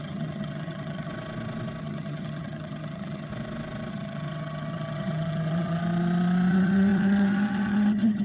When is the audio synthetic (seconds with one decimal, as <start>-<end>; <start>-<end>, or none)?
0.0-1.1; 1.8-3.3; 3.9-5.8; 6.5-8.2